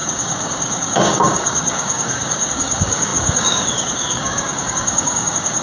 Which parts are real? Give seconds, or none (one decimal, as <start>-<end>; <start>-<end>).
none